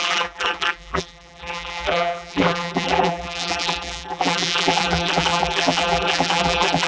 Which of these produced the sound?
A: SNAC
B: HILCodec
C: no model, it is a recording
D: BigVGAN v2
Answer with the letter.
D